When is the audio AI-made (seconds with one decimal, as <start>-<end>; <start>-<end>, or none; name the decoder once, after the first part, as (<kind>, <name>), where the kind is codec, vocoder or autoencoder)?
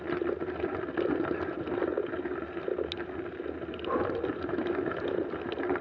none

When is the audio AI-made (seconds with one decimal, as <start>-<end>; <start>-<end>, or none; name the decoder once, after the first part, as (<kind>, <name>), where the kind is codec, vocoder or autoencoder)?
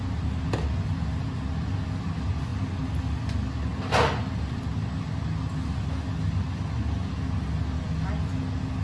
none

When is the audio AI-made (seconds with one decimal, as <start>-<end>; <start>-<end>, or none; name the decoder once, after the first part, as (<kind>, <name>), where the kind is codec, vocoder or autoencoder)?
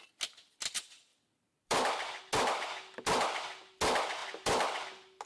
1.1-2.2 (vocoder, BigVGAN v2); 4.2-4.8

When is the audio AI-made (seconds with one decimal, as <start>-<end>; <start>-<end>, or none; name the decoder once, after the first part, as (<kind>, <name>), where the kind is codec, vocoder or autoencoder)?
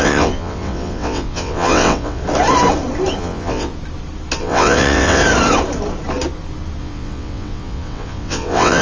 0.0-2.2 (vocoder, WaveNeXt); 3.2-3.7; 4.4-5.2; 6.8-8.8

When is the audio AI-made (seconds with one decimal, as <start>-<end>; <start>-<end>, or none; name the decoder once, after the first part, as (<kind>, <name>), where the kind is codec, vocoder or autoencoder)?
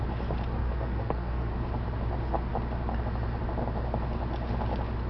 0.6-1.5 (codec, SNAC)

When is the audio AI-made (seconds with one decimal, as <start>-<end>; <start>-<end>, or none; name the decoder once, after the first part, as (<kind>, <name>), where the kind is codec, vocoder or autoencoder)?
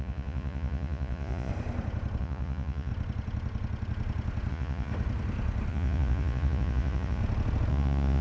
0.0-1.5 (vocoder, Vocos); 2.2-2.9; 4.5-4.9; 5.7-7.2; 7.7-8.2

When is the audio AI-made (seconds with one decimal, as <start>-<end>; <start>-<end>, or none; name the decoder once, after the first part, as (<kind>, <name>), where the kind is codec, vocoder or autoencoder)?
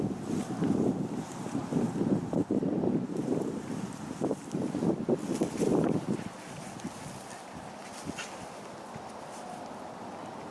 1.6-4.8 (vocoder, BigVGAN v2)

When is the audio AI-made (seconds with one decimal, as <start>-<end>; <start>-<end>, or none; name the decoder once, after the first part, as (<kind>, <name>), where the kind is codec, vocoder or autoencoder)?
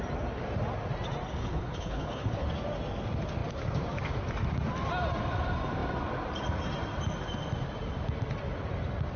1.4-2.5 (codec, HILCodec)